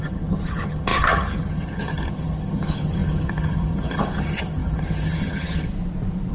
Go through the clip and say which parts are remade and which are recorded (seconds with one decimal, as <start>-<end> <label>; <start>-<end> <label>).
0.0-5.7 remade; 5.7-6.3 recorded